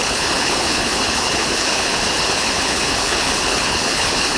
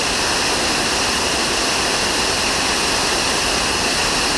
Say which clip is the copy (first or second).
first